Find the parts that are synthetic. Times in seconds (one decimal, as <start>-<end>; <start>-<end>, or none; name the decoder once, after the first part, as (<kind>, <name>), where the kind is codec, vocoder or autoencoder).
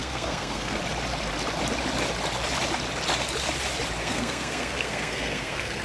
0.0-0.8 (codec, SNAC); 4.0-5.8